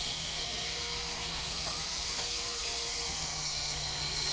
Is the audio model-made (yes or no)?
yes